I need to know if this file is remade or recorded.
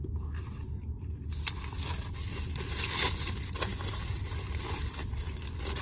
recorded